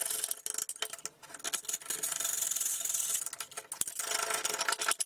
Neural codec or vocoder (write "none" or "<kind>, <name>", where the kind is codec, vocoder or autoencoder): none